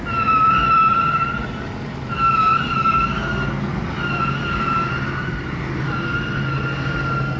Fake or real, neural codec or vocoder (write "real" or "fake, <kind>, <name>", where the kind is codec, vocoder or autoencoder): real